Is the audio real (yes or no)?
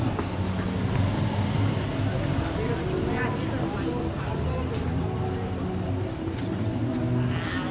yes